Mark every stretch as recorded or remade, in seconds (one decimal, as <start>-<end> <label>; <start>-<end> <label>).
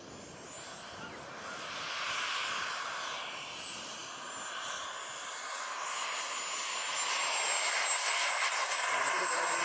0.0-9.6 recorded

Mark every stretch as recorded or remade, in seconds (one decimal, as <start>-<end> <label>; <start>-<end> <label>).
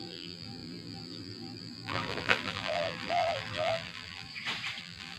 0.0-4.3 remade; 4.3-4.8 recorded; 4.8-5.2 remade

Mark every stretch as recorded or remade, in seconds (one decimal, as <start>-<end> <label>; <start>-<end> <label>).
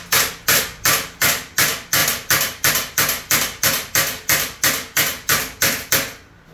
0.0-6.5 recorded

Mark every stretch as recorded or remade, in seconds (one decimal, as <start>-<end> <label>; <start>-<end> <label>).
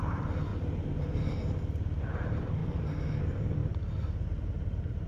0.0-0.5 remade; 0.5-1.6 recorded; 1.6-2.6 remade; 2.6-3.2 recorded; 3.2-5.1 remade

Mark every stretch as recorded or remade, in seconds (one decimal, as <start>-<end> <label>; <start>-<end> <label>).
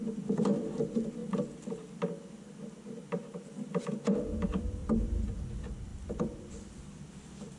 0.0-4.8 recorded; 4.8-5.4 remade; 5.4-5.9 recorded; 5.9-7.1 remade; 7.1-7.6 recorded